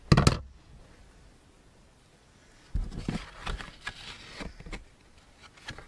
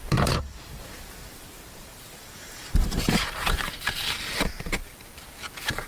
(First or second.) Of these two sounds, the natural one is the first